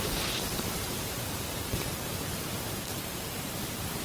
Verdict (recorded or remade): remade